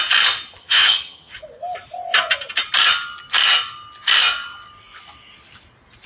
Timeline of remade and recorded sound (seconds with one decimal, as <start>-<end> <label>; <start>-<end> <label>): 0.0-0.6 recorded; 0.6-1.3 remade; 1.3-6.1 recorded

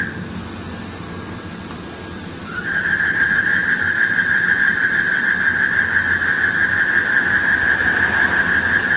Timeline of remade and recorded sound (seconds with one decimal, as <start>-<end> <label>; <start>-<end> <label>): 0.0-2.5 recorded; 2.5-3.2 remade; 3.2-7.3 recorded; 7.3-8.4 remade; 8.4-9.0 recorded

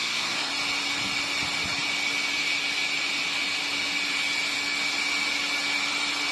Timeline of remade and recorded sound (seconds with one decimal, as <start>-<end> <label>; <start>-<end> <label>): 0.0-0.5 remade; 0.5-6.3 recorded

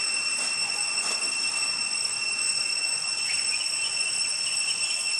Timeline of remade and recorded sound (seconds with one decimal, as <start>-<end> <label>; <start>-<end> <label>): 0.0-0.6 recorded; 0.6-1.2 remade; 1.2-1.8 recorded; 1.8-5.2 remade

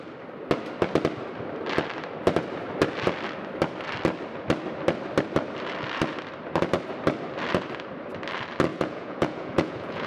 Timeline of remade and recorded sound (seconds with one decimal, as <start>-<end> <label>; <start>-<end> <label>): 0.0-8.7 recorded; 8.7-10.1 remade

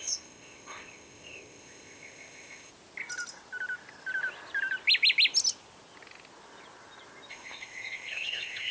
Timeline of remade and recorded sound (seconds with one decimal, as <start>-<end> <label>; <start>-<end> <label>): 0.0-2.7 remade; 2.7-7.3 recorded; 7.3-8.7 remade

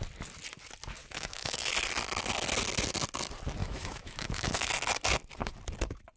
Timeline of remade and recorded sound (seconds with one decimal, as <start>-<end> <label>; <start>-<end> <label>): 0.0-1.0 recorded; 1.0-1.7 remade; 1.7-3.6 recorded; 3.6-4.7 remade; 4.7-6.2 recorded